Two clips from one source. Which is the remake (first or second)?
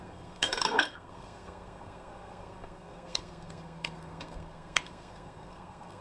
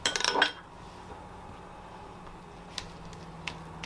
first